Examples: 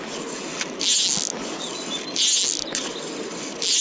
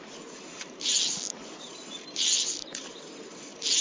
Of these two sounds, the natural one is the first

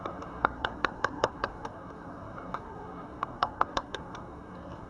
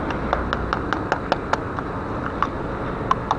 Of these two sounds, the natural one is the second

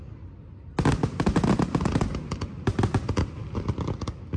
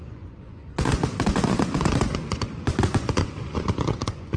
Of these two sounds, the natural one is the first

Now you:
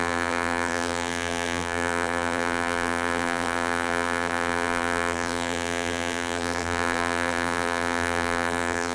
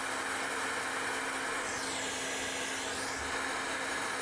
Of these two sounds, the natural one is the second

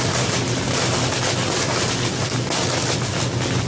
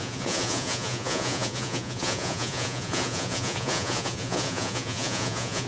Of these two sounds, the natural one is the first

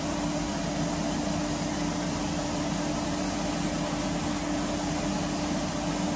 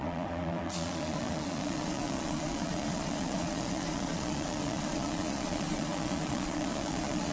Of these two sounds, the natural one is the first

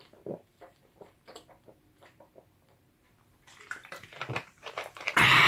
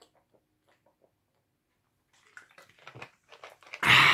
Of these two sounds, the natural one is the second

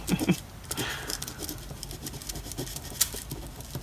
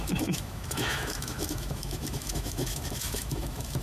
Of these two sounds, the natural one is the first